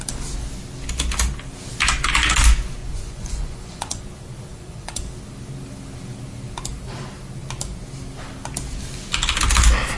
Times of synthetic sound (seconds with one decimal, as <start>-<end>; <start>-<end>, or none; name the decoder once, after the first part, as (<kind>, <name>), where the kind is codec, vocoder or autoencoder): 2.8-4.0 (vocoder, Vocos); 4.5-5.0